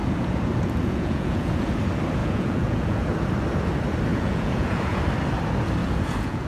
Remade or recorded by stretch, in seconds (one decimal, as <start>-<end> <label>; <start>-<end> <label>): 0.0-1.8 remade; 1.8-2.2 recorded; 2.2-3.1 remade; 3.1-4.1 recorded; 4.1-5.0 remade; 5.0-5.8 recorded; 5.8-6.5 remade